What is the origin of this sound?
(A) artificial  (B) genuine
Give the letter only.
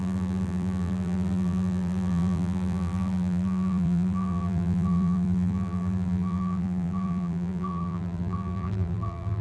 A